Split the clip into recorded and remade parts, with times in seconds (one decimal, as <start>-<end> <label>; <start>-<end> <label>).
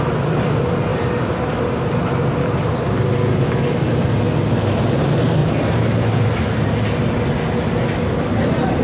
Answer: 0.0-5.4 recorded; 5.4-6.6 remade; 6.6-8.8 recorded